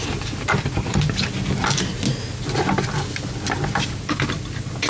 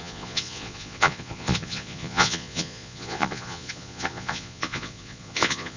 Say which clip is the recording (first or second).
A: first